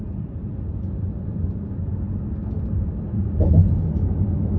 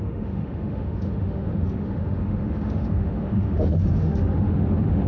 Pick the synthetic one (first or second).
second